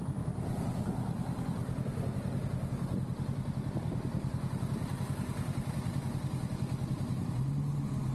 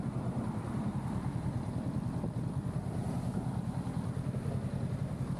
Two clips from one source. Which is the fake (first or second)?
second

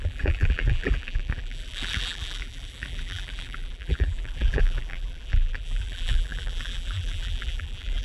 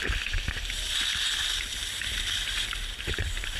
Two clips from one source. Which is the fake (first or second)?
first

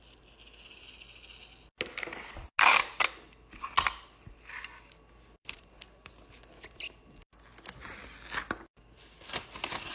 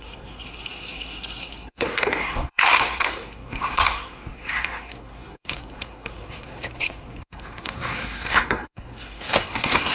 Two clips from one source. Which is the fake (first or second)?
second